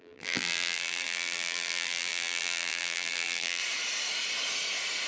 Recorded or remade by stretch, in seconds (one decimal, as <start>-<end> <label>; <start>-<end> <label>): 0.0-3.6 remade; 3.6-5.1 recorded